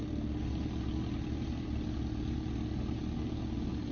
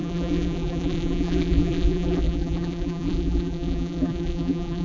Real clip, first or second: first